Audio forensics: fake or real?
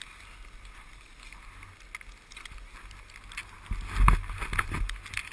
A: real